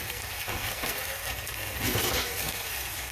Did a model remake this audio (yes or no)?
yes